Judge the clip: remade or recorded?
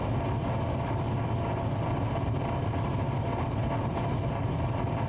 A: recorded